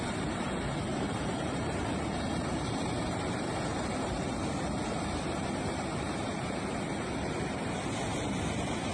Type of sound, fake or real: fake